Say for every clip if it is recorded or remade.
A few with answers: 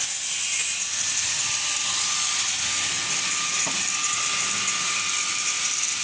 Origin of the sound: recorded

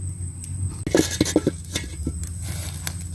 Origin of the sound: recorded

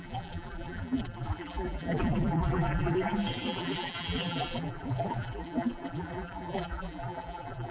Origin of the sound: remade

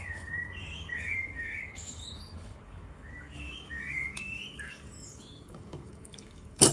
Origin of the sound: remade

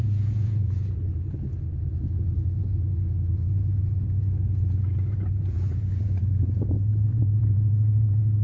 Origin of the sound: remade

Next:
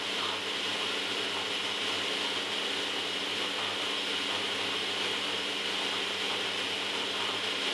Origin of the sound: recorded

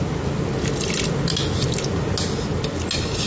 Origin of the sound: recorded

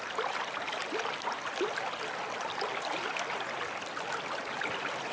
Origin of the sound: recorded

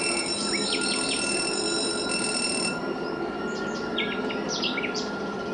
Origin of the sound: recorded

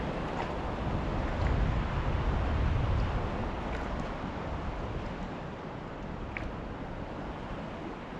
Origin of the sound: recorded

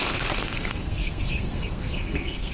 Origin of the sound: remade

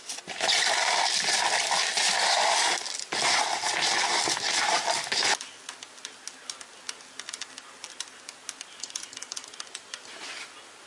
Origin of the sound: recorded